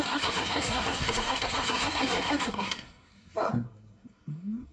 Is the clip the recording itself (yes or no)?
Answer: no